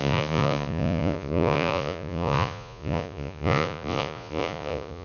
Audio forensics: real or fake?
fake